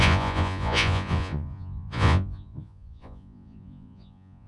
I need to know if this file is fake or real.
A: fake